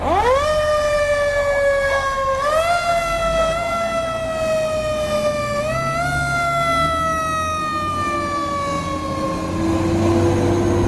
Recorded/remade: recorded